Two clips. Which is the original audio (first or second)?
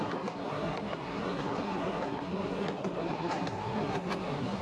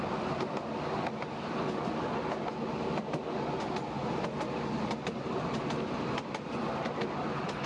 second